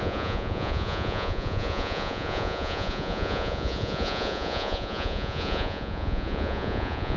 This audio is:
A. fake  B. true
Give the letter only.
A